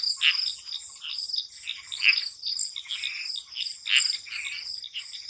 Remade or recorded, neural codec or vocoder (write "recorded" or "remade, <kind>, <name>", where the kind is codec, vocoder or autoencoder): recorded